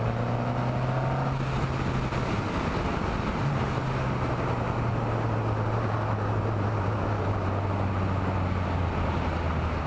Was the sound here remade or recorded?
recorded